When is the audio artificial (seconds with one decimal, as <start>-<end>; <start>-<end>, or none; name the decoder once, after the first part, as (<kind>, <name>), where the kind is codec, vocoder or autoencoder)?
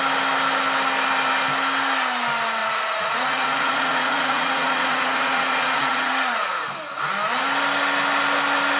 2.6-6.7 (vocoder, Vocos)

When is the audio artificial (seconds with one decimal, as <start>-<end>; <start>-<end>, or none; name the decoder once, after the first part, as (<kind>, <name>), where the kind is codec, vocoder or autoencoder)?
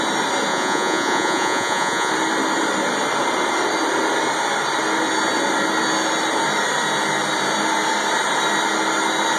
0.5-2.1 (vocoder, Vocos)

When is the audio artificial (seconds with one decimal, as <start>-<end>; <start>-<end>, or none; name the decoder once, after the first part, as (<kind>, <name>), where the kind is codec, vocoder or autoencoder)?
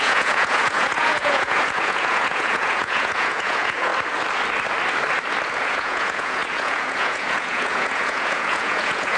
0.0-3.9 (vocoder, Vocos); 5.6-9.2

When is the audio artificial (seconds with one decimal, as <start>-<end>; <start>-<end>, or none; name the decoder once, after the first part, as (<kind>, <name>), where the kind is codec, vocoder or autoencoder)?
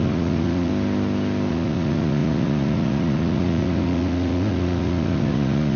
0.0-0.7 (vocoder, Vocos); 1.5-5.8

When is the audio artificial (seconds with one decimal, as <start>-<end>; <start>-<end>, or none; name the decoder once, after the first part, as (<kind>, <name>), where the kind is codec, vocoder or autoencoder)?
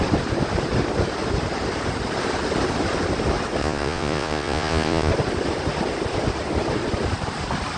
3.6-5.1 (vocoder, Vocos)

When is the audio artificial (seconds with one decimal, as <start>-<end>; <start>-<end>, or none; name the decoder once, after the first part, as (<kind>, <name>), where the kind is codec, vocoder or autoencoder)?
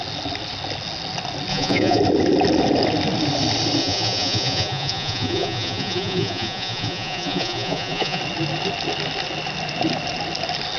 1.5-2.0 (vocoder, Vocos); 3.8-8.2